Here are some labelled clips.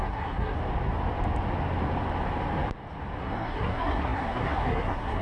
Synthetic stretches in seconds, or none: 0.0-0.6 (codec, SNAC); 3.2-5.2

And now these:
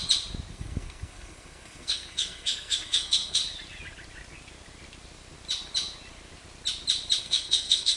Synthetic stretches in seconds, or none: 0.5-3.4 (codec, SNAC); 7.2-8.0

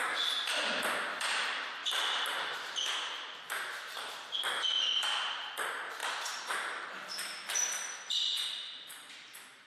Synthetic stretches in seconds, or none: none